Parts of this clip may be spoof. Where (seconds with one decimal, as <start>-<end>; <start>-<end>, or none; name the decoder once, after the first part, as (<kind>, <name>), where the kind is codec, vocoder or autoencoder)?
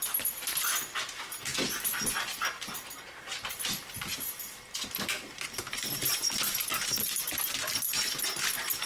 none